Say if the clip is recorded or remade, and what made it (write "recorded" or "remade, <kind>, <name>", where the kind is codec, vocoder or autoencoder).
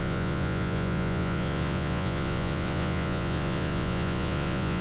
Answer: remade, vocoder, Vocos